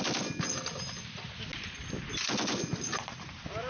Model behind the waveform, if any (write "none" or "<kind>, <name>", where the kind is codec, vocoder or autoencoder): none